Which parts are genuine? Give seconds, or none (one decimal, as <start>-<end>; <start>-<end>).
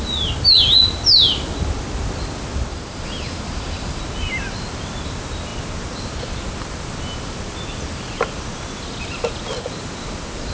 0.0-2.7; 4.0-10.5